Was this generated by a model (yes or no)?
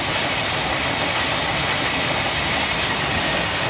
no